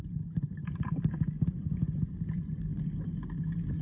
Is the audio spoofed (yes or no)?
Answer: no